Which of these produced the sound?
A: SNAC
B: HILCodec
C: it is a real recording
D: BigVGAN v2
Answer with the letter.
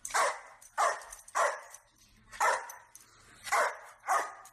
D